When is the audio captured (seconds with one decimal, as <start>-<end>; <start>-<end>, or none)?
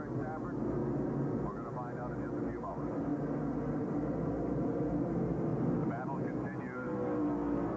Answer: 0.0-7.8